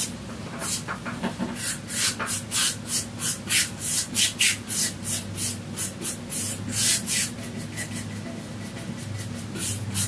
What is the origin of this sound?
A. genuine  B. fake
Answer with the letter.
A